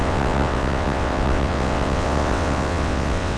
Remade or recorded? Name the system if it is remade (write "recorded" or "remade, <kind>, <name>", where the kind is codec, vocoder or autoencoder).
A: remade, vocoder, WaveNeXt